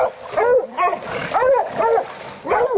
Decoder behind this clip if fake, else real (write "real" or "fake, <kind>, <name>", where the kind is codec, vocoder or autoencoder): real